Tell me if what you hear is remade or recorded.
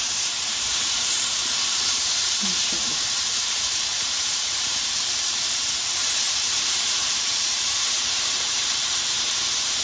remade